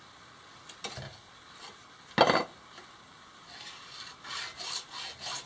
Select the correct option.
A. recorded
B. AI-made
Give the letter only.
A